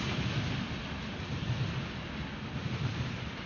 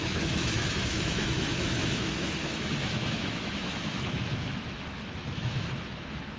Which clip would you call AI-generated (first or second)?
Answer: second